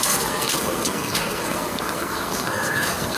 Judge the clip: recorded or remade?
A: remade